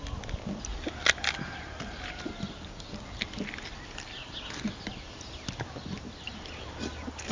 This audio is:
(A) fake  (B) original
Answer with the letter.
B